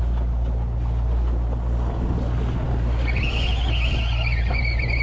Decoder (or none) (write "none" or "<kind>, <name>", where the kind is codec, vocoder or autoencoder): none